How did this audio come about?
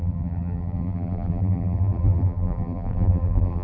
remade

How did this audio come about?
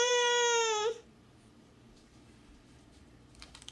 remade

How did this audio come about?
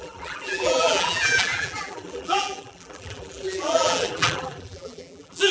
remade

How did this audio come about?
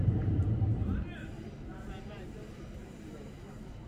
recorded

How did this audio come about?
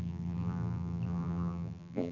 remade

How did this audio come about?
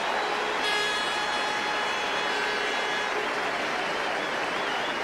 recorded